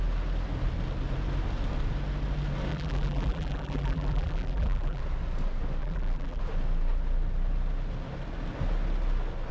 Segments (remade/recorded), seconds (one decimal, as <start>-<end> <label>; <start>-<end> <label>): 0.0-2.7 recorded; 2.7-5.0 remade; 5.0-5.8 recorded; 5.8-6.4 remade; 6.4-9.5 recorded